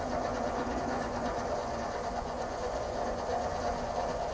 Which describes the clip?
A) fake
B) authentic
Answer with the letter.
A